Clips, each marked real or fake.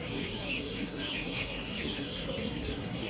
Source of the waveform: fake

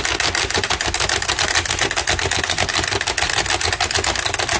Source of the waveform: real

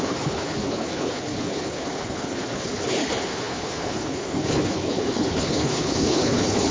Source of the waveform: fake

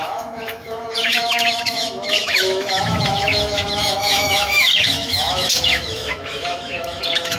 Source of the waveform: fake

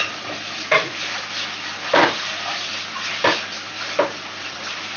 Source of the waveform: fake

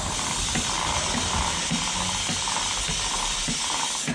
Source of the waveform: real